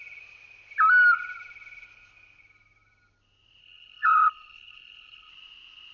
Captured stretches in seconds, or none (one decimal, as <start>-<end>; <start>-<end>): 0.0-3.6; 5.3-5.9